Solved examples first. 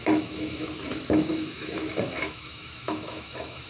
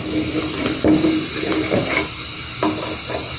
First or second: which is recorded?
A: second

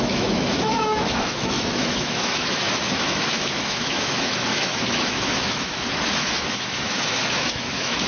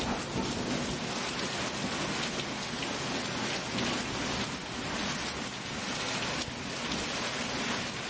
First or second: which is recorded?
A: second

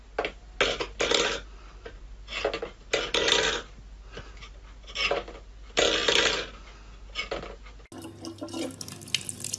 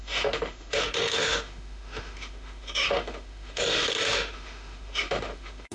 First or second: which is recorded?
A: first